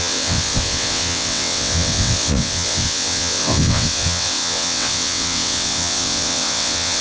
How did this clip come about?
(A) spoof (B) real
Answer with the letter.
A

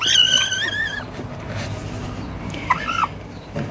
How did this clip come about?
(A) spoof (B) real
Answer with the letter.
B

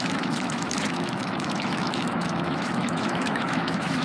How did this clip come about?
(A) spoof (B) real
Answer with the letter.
A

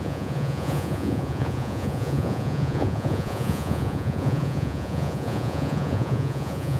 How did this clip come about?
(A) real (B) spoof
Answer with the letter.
B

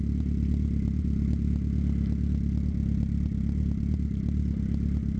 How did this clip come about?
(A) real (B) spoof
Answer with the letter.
A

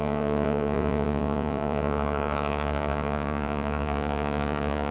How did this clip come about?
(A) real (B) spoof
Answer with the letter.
B